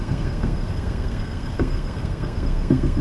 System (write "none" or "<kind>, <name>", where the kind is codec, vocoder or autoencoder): codec, SNAC